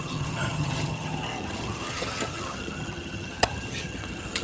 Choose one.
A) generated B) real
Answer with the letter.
A